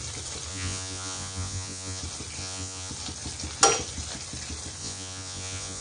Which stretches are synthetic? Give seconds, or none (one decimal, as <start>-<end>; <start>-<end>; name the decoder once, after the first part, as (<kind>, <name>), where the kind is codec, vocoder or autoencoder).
0.5-2.0 (vocoder, Vocos); 2.4-2.9; 4.8-5.8